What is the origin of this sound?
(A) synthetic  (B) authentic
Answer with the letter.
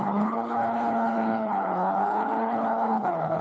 A